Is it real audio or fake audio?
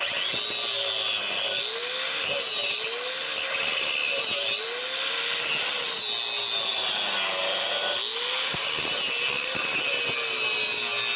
real